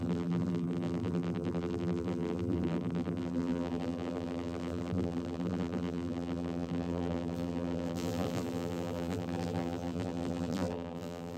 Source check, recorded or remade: remade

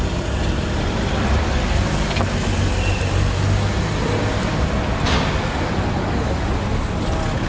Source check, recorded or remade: recorded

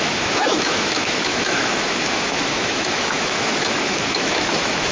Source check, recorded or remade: remade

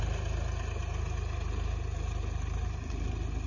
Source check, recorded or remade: recorded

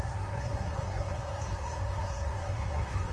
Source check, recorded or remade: remade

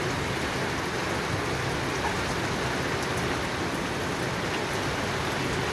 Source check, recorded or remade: recorded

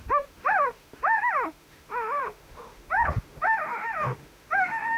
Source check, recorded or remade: remade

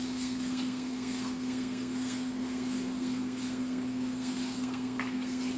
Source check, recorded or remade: remade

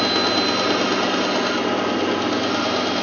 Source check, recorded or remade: recorded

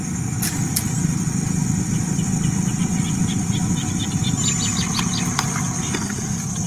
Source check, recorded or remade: recorded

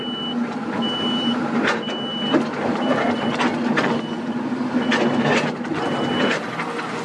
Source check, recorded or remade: recorded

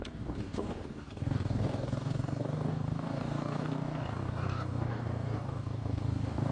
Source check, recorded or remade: remade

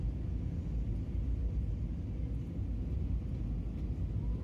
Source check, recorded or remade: recorded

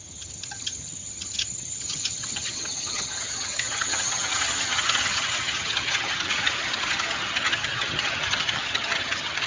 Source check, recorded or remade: remade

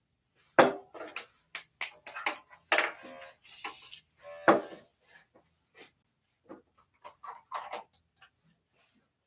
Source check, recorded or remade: recorded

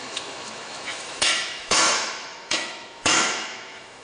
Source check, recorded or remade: remade